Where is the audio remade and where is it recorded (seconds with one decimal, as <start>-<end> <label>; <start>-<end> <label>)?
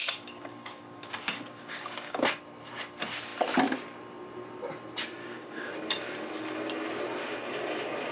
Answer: 0.0-2.4 remade; 2.4-5.2 recorded; 5.2-5.7 remade; 5.7-8.1 recorded